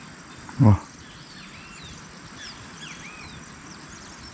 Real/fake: fake